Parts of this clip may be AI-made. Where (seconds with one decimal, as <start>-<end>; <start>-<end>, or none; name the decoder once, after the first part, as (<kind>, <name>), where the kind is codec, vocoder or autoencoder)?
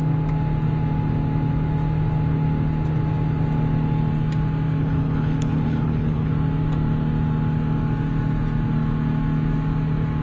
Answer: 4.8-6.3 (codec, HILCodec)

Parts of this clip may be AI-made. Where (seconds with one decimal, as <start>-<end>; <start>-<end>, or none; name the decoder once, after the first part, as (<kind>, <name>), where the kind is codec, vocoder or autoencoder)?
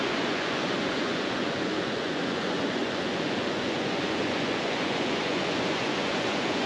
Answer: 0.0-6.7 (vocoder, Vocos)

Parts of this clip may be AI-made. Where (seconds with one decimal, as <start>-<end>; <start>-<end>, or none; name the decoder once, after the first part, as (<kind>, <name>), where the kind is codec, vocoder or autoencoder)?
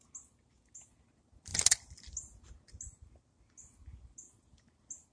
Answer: none